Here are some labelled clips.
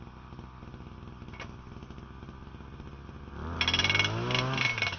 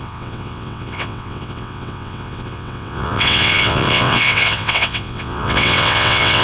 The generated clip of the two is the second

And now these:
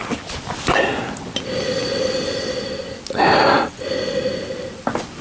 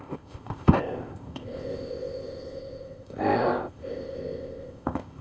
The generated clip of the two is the second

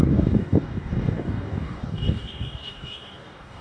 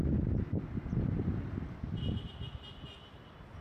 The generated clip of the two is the first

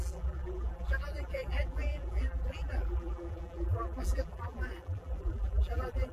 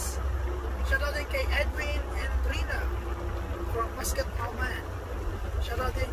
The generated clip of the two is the first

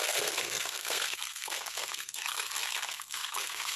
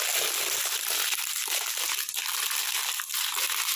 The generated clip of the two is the first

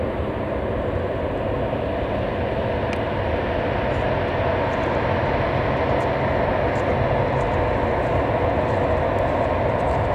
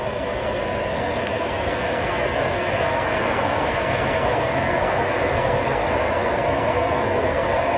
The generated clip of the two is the second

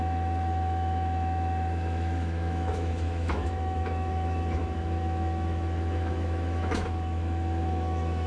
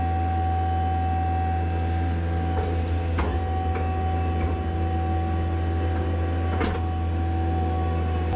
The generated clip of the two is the first